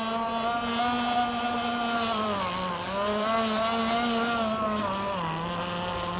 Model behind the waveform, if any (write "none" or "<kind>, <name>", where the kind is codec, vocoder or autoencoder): none